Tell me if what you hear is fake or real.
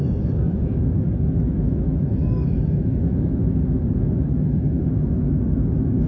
fake